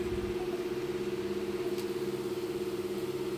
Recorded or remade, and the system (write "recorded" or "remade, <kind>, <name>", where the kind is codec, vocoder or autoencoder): recorded